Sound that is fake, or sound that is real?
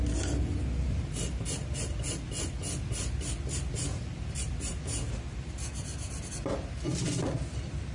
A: real